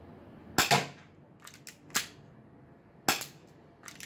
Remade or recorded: recorded